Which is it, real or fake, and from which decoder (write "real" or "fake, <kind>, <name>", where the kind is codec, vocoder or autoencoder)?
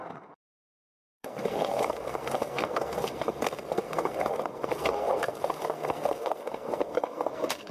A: fake, codec, SNAC